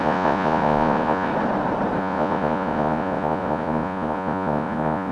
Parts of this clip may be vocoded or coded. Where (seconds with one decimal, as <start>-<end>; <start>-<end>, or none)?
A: 0.0-1.3; 2.0-5.1